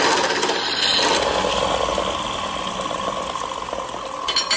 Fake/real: real